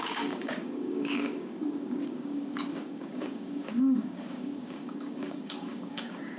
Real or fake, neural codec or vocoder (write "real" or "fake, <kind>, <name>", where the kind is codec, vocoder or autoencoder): fake, codec, DAC